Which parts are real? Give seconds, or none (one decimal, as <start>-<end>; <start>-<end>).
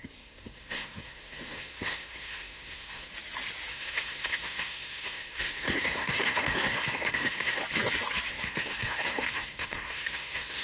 3.1-3.7; 7.6-8.3